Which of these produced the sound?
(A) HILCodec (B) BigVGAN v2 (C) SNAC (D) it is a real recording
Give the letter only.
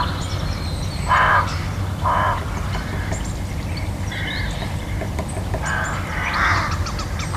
D